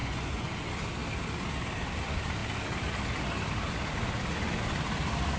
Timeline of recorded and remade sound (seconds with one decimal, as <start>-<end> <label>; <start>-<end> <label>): 0.0-0.5 remade; 0.5-5.4 recorded